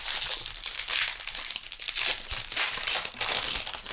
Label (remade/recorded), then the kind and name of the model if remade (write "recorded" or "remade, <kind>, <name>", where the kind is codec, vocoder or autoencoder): recorded